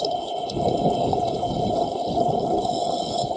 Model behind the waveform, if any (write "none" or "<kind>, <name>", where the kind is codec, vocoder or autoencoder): codec, HILCodec